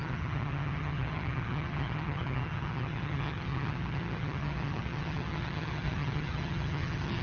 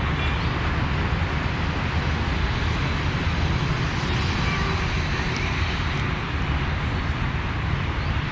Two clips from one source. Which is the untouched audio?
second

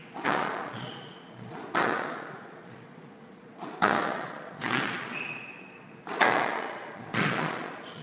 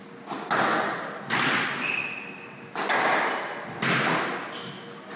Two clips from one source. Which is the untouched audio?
second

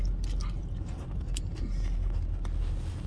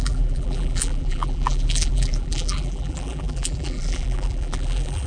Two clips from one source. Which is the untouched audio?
first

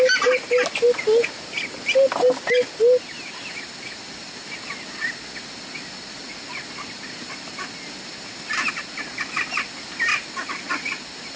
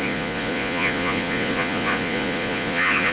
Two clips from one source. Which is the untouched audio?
first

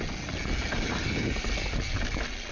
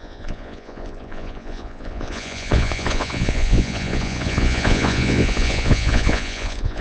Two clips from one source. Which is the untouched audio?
first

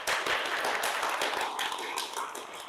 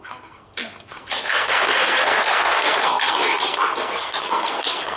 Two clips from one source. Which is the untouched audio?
first